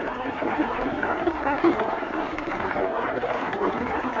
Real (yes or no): no